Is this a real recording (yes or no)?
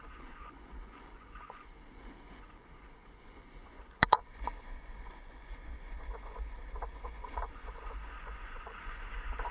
no